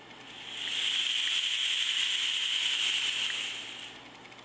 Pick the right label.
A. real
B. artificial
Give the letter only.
A